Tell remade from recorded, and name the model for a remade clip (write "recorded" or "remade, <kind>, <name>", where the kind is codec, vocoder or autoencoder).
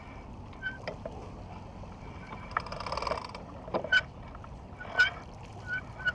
recorded